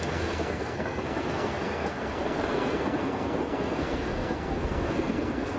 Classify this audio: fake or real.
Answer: fake